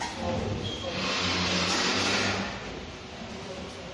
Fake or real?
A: real